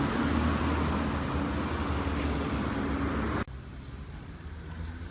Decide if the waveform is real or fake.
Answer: real